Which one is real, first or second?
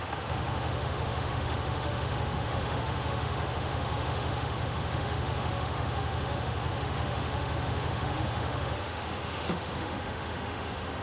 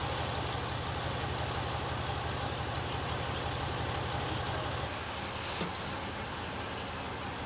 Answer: second